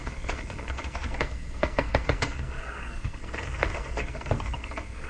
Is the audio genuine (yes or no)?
no